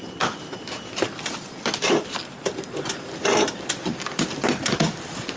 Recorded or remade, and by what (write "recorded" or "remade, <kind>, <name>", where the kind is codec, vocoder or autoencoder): remade, vocoder, BigVGAN v2